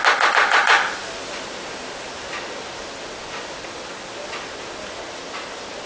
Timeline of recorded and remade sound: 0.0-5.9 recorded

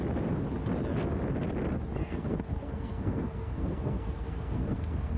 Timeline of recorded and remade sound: 0.0-2.0 recorded; 2.0-5.2 remade